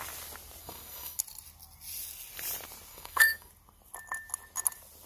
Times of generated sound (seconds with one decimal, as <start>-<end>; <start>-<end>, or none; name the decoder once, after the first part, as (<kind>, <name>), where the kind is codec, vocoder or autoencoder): 0.6-1.2 (codec, SNAC); 2.9-3.5

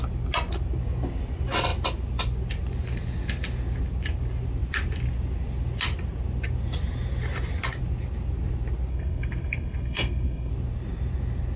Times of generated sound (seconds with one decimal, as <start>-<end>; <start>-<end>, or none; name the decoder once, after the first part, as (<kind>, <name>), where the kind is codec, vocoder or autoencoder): 8.9-10.5 (codec, SNAC)